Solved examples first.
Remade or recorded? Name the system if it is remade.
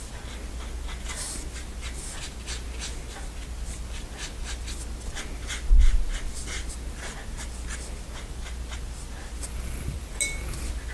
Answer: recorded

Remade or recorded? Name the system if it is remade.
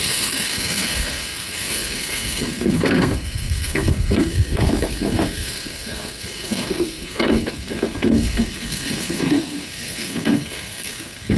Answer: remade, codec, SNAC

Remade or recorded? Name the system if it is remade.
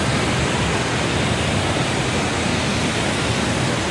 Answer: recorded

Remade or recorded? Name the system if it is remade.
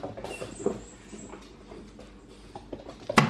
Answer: recorded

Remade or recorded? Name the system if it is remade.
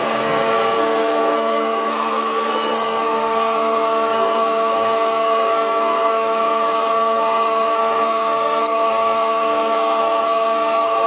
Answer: remade, codec, SNAC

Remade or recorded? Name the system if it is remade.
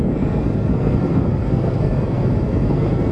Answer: remade, codec, SNAC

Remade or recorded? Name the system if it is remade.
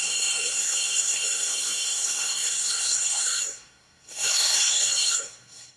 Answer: remade, codec, SNAC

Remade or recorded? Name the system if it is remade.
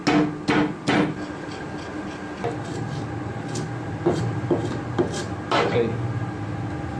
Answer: recorded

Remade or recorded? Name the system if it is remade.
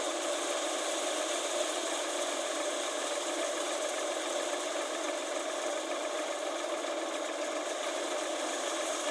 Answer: recorded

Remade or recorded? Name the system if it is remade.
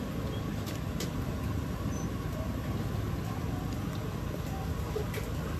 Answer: recorded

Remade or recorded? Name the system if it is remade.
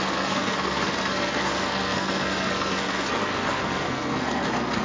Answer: remade, codec, SNAC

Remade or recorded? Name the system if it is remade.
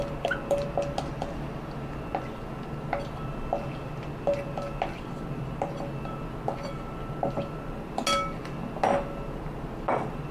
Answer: recorded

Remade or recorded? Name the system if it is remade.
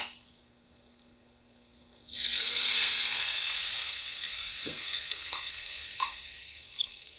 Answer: remade, codec, SNAC